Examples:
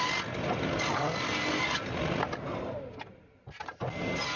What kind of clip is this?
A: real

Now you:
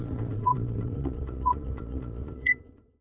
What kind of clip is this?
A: fake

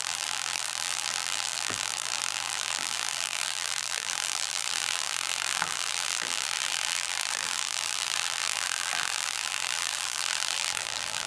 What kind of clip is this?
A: fake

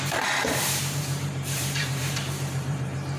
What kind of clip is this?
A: fake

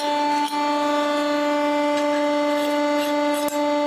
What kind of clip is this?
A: real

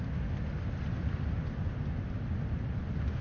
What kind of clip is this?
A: real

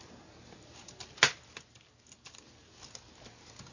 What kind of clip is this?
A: real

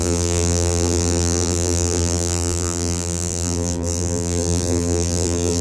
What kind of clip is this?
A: fake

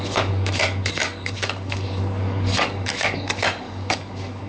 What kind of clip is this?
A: fake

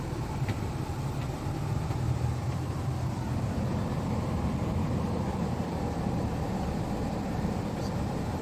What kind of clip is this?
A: fake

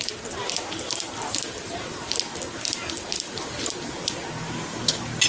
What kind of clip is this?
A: real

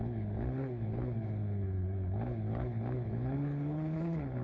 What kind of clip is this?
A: fake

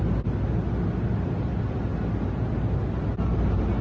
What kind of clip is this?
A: real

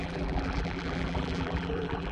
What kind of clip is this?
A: fake